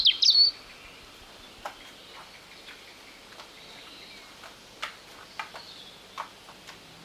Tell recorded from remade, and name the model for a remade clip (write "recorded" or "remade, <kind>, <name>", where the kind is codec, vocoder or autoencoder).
recorded